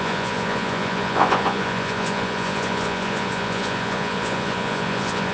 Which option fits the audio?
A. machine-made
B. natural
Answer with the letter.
A